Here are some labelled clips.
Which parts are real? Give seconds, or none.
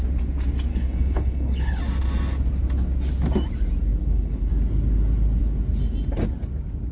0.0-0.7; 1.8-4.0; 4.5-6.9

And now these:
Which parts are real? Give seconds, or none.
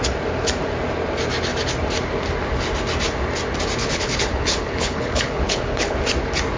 0.0-3.8; 6.0-6.6